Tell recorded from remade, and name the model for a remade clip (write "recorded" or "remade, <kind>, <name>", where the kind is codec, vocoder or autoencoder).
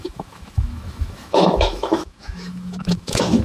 remade, autoencoder, DAC-VAE